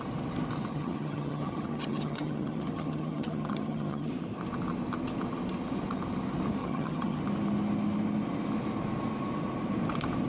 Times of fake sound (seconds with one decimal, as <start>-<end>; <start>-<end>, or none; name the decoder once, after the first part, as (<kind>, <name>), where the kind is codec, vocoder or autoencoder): 0.7-4.1 (vocoder, HiFi-GAN); 6.6-7.2